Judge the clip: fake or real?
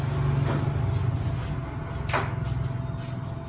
real